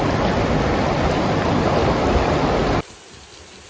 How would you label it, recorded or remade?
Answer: recorded